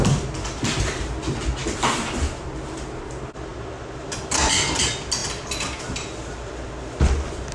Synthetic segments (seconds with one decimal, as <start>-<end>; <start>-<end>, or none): none